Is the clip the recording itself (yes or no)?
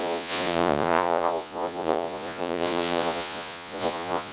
no